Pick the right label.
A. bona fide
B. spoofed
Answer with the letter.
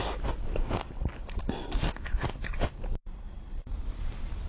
A